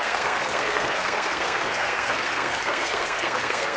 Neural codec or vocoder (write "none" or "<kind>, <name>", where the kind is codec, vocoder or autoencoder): codec, SNAC